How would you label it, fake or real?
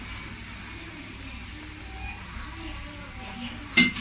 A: real